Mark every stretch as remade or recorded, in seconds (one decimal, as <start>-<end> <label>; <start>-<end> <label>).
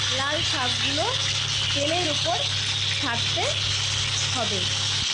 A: 0.0-5.1 recorded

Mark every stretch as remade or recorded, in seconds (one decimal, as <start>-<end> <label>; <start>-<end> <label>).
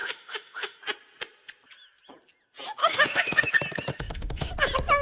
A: 0.0-0.8 remade; 0.8-2.8 recorded; 2.8-3.5 remade; 3.5-3.9 recorded; 3.9-4.5 remade; 4.5-5.0 recorded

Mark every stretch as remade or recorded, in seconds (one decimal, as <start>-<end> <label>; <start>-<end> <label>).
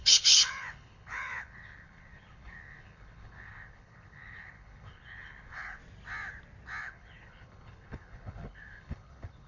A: 0.0-5.8 remade; 5.8-6.8 recorded; 6.8-9.5 remade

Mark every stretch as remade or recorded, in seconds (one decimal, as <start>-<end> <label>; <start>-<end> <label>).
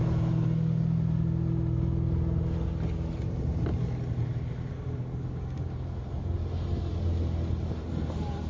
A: 0.0-8.5 recorded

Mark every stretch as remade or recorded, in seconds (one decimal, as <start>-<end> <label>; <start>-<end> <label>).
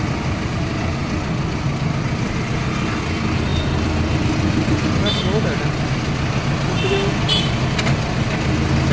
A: 0.0-8.9 recorded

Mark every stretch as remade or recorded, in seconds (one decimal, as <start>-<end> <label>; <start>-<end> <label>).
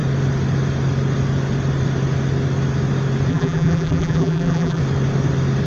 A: 0.0-3.3 recorded; 3.3-4.8 remade; 4.8-5.7 recorded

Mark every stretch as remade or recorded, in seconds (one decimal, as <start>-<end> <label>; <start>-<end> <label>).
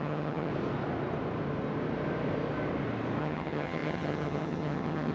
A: 0.0-0.5 remade; 0.5-3.2 recorded; 3.2-5.1 remade